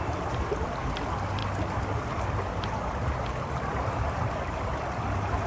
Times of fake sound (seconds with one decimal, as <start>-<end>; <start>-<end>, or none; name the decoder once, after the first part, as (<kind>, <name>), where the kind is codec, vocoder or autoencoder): 3.7-4.4 (vocoder, BigVGAN v2)